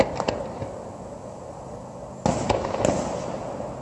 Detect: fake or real real